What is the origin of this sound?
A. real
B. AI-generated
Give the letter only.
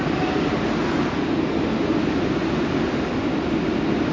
A